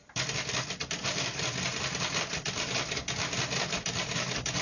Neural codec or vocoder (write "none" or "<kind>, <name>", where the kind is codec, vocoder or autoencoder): vocoder, BigVGAN v2